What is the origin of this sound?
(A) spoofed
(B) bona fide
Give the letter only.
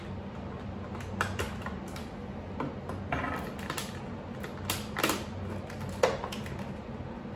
B